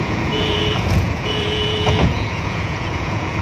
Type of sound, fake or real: fake